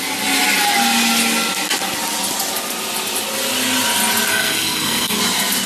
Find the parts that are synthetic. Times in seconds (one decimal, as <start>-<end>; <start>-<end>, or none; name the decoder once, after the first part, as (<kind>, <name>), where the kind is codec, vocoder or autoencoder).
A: 4.3-5.2 (codec, SNAC)